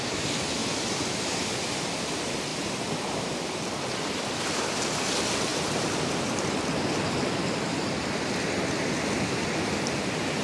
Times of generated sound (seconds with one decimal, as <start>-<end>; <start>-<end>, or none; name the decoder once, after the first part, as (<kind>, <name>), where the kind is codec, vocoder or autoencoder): 2.5-5.0 (vocoder, BigVGAN v2); 5.5-8.4